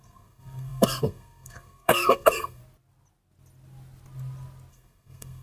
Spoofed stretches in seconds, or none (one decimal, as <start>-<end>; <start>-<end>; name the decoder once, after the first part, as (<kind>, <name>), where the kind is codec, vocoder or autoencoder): 0.0-2.6 (codec, SNAC); 4.7-5.4